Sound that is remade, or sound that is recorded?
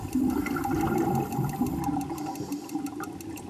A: recorded